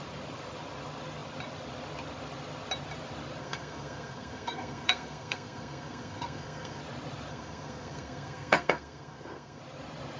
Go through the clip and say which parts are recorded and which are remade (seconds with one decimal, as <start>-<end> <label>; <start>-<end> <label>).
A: 0.0-3.4 recorded; 3.4-6.8 remade; 6.8-7.3 recorded; 7.3-9.6 remade; 9.6-10.2 recorded